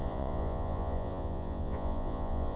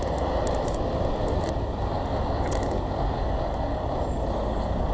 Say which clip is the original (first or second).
second